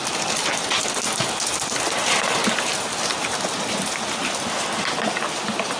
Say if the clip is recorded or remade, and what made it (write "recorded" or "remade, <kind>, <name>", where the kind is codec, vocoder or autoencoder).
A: recorded